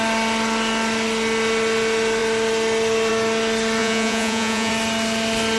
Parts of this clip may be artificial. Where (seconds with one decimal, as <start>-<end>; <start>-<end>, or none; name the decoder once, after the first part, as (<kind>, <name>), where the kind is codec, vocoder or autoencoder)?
3.8-4.7 (vocoder, Vocos)